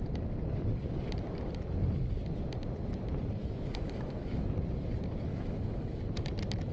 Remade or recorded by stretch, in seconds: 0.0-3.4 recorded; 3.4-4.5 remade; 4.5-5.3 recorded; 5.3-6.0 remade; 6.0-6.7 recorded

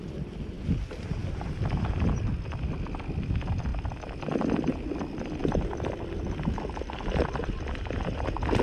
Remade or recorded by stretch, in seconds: 0.0-8.6 recorded

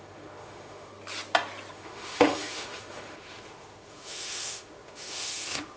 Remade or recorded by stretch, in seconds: 0.0-0.9 remade; 0.9-1.7 recorded; 1.7-5.8 remade

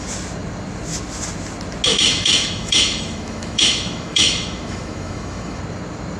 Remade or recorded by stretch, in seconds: 0.0-1.9 recorded; 1.9-5.6 remade; 5.6-6.2 recorded

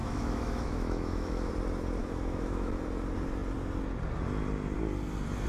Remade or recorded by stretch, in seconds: 0.0-1.5 remade; 1.5-2.0 recorded; 2.0-2.7 remade; 2.7-5.5 recorded

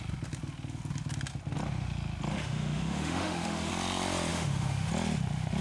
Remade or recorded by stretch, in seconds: 0.0-2.3 recorded; 2.3-3.7 remade; 3.7-4.3 recorded; 4.3-4.9 remade; 4.9-5.6 recorded

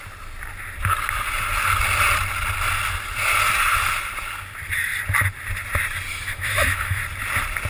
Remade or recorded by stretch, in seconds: 0.0-6.1 recorded; 6.1-7.0 remade; 7.0-7.7 recorded